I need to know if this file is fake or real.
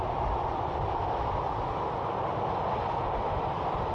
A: real